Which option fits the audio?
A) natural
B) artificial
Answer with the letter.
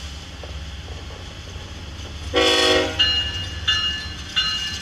A